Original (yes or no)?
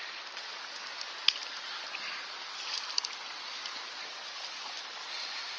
yes